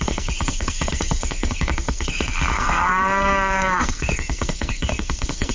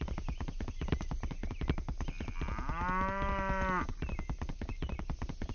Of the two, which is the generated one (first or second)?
first